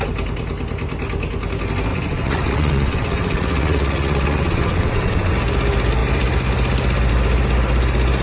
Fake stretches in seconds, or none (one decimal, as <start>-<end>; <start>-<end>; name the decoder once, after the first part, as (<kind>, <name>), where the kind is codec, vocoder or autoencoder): 1.9-5.3 (vocoder, WaveNeXt)